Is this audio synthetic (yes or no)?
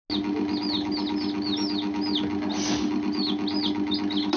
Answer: no